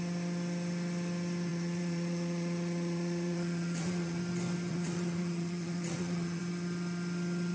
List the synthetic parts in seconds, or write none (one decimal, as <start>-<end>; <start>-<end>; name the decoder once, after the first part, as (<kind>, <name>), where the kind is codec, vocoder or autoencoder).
1.5-4.2 (vocoder, Vocos); 4.7-6.4